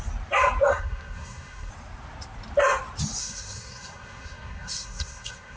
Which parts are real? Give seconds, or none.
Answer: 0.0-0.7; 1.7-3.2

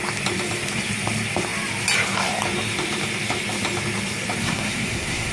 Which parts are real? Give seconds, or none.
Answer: 0.0-4.4

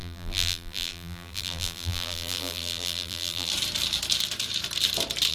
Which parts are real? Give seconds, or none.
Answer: 3.5-5.3

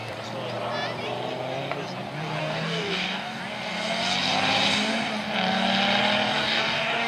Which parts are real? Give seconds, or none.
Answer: 0.0-2.4; 3.4-6.4

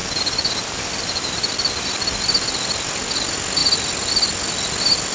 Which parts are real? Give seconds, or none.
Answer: 0.0-5.1

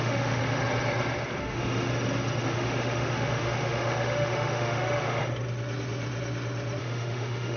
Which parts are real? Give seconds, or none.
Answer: 0.6-1.4; 1.9-2.4; 5.2-6.8

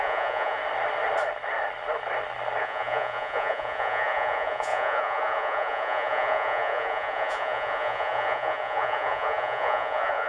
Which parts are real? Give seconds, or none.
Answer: 0.6-2.6